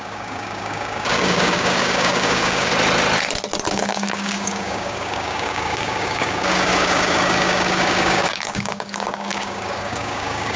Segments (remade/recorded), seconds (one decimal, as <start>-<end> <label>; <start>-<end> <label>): 0.0-2.7 remade; 2.7-3.7 recorded; 3.7-10.6 remade

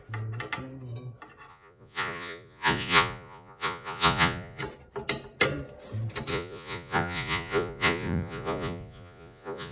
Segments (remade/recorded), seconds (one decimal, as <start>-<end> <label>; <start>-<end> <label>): 0.0-1.5 recorded; 1.5-4.6 remade; 4.6-6.3 recorded; 6.3-9.7 remade

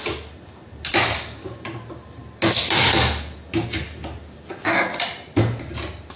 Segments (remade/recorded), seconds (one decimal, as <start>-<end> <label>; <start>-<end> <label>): 0.0-6.2 recorded

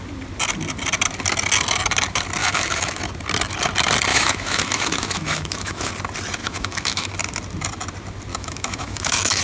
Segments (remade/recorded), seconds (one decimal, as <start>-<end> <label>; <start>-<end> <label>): 0.0-2.4 recorded; 2.4-3.0 remade; 3.0-4.1 recorded; 4.1-5.9 remade; 5.9-6.4 recorded; 6.4-7.1 remade; 7.1-8.3 recorded; 8.3-9.4 remade

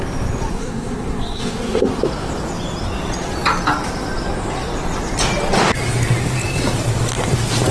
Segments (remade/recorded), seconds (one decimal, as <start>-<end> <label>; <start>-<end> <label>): 0.0-0.5 recorded; 0.5-2.0 remade; 2.0-7.7 recorded